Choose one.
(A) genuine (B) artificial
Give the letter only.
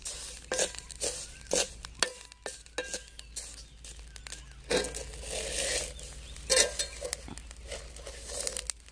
A